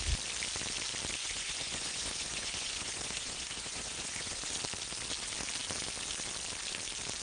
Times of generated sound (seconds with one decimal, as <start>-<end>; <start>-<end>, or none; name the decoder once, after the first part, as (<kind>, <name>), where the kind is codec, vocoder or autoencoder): 1.2-4.5 (vocoder, Vocos)